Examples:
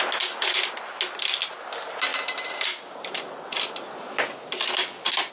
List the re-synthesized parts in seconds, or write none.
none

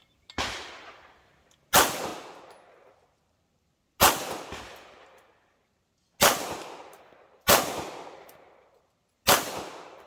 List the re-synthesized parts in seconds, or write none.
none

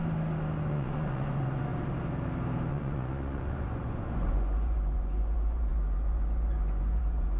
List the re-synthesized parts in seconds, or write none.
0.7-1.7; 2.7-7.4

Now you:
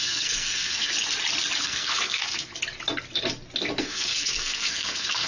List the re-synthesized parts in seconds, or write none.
0.0-0.9; 1.6-2.5; 3.8-5.3